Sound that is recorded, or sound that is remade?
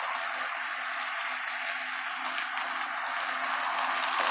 recorded